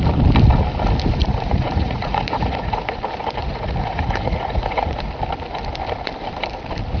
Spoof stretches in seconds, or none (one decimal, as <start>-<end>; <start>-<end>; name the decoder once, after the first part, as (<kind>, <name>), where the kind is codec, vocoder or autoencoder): 1.2-3.0 (vocoder, Vocos); 3.4-5.1